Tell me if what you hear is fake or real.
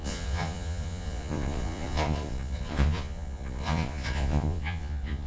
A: fake